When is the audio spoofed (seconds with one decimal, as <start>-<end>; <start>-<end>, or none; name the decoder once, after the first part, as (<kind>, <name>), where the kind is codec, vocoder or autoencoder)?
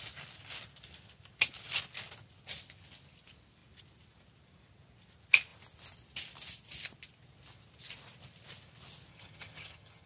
9.1-10.1 (vocoder, HiFi-GAN)